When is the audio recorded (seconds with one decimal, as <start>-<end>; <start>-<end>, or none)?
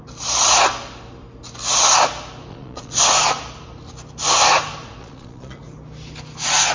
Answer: 0.0-2.5; 3.0-5.0; 5.6-6.7